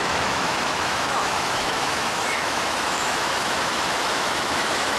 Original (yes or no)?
no